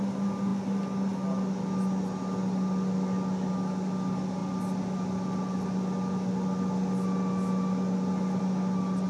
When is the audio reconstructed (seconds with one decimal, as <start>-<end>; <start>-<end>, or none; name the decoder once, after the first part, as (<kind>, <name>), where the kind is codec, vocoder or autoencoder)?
none